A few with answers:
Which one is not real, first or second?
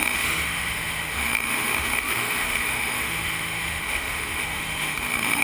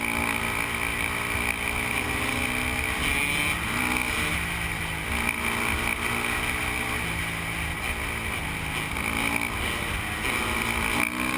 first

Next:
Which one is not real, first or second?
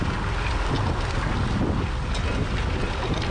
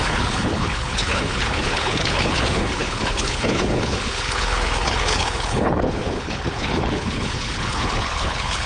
second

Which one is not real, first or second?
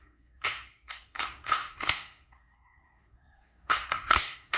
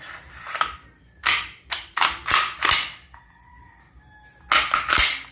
first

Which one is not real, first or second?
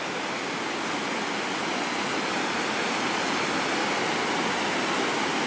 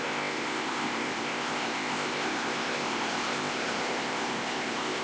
second